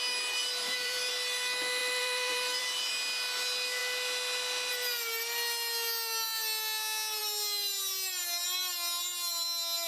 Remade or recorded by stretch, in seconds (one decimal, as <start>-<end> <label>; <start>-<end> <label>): 0.0-0.4 recorded; 0.4-1.1 remade; 1.1-1.8 recorded; 1.8-2.9 remade; 2.9-9.9 recorded